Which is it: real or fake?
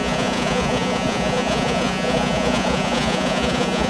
fake